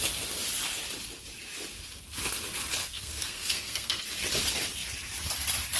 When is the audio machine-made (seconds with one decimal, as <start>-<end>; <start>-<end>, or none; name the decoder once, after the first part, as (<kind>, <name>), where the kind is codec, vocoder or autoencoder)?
2.8-4.0 (codec, SNAC)

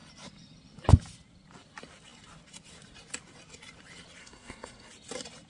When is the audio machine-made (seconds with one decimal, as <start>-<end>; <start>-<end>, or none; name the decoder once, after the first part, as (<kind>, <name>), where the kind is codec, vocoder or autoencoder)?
4.2-4.9 (codec, SNAC)

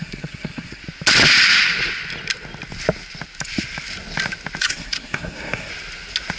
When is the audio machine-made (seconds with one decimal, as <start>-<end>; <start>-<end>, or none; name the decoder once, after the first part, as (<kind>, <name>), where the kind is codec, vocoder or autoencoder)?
0.0-0.8 (codec, SNAC); 4.6-5.7

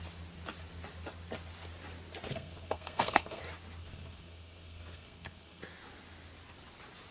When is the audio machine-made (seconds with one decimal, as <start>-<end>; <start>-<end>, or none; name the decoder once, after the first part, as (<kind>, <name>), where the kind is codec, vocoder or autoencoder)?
2.3-3.4 (codec, SNAC); 3.8-5.6

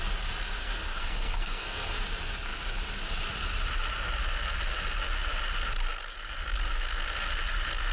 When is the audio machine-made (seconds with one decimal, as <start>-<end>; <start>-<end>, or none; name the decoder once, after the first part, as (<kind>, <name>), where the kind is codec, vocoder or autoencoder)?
0.6-2.0 (codec, SNAC)

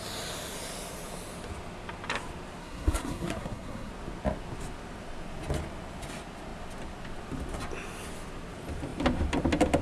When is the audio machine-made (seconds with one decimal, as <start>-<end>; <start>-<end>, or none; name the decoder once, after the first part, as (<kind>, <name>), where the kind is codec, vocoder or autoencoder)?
2.6-3.9 (codec, SNAC)

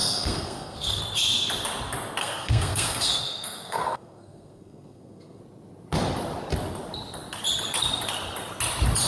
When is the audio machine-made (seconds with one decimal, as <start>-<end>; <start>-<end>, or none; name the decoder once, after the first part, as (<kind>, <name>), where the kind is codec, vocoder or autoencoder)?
0.0-1.0 (codec, SNAC); 2.2-5.4